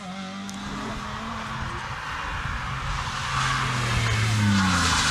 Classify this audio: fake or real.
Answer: real